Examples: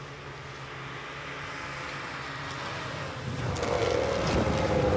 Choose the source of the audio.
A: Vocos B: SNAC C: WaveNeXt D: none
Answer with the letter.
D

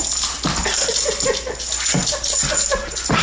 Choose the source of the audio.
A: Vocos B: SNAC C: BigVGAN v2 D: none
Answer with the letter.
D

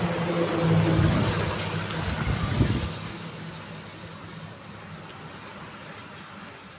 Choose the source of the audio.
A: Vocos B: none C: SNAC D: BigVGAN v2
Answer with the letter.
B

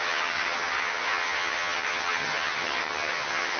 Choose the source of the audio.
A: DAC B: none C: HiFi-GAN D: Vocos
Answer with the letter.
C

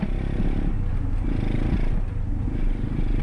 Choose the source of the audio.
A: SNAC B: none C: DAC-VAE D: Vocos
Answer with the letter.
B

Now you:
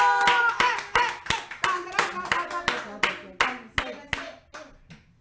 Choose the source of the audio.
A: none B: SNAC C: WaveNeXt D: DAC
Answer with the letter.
A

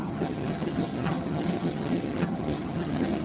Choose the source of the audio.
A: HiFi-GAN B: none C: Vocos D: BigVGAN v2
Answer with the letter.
A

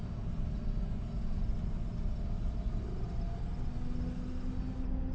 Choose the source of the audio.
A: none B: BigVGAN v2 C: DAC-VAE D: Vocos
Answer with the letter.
A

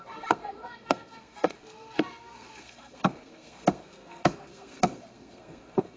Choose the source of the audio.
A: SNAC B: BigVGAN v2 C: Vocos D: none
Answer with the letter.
A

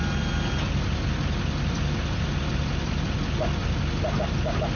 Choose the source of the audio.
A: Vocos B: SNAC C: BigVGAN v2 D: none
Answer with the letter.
D